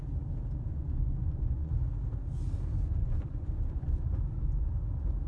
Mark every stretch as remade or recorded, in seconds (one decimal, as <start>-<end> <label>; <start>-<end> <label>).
0.0-0.7 recorded; 0.7-1.7 remade; 1.7-3.0 recorded; 3.0-4.7 remade; 4.7-5.3 recorded